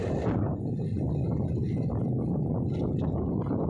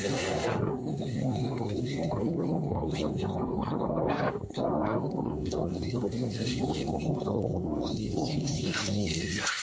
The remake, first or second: second